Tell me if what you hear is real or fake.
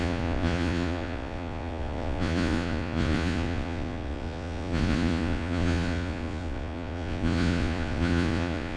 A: fake